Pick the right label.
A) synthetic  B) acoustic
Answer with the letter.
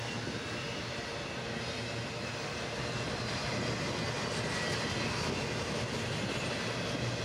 B